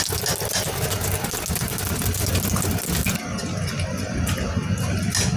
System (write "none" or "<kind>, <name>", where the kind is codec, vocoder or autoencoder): none